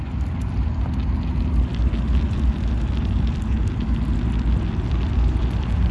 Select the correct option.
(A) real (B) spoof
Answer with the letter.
A